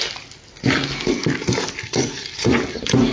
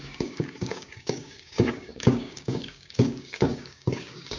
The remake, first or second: second